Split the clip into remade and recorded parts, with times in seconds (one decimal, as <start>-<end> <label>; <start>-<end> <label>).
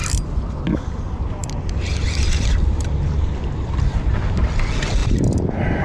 0.0-1.4 recorded; 1.4-4.1 remade; 4.1-5.8 recorded